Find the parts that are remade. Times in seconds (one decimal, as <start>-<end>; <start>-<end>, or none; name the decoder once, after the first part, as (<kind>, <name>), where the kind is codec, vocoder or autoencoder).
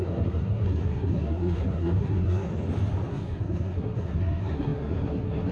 0.0-2.5 (codec, SNAC); 3.1-5.5